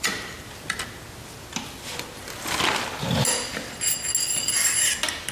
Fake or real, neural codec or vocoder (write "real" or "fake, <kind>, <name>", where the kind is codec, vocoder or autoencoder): real